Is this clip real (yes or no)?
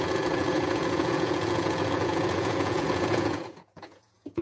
no